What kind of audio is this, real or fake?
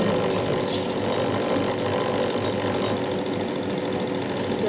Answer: real